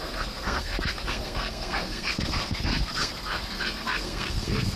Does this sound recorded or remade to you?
remade